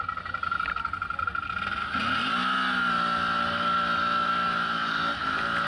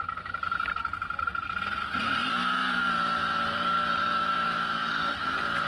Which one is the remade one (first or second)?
second